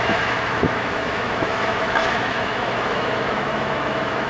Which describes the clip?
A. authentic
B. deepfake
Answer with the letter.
B